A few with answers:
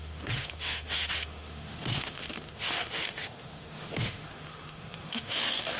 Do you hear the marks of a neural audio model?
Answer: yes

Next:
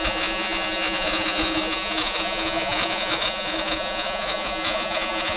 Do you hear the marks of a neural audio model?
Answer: yes